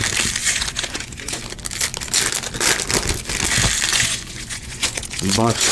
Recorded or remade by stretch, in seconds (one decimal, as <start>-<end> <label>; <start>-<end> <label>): 0.0-0.4 recorded; 0.4-1.4 remade; 1.4-3.9 recorded; 3.9-5.7 remade